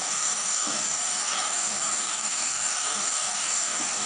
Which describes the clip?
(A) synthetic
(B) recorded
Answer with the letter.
A